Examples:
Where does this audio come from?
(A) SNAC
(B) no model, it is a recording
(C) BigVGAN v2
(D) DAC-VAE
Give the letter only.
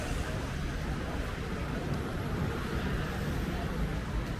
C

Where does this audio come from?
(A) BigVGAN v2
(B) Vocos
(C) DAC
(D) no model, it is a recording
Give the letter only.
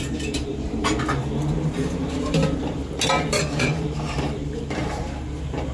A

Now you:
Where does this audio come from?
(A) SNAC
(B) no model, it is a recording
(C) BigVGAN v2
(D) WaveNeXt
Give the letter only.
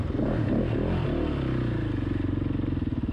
B